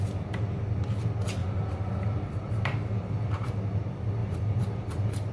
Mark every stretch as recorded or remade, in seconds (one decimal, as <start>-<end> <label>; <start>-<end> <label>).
0.0-1.4 recorded; 1.4-3.6 remade; 3.6-4.2 recorded; 4.2-5.3 remade